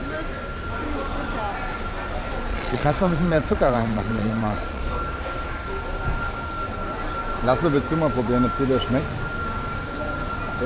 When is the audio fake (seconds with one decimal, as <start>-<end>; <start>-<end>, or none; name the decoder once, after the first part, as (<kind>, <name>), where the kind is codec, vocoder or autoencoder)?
2.5-4.8 (vocoder, Vocos)